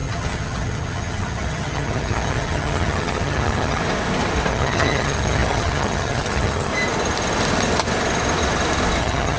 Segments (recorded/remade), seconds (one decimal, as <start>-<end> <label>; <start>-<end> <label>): 0.0-3.8 remade; 3.8-4.5 recorded; 4.5-6.7 remade; 6.7-9.0 recorded; 9.0-9.4 remade